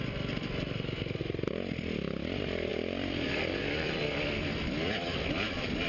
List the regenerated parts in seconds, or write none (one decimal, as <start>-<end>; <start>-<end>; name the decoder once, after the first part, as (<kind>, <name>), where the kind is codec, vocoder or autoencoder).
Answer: 2.7-4.0 (vocoder, BigVGAN v2)